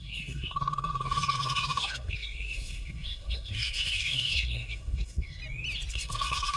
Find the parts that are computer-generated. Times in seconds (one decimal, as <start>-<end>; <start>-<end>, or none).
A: 0.0-5.4; 5.9-6.6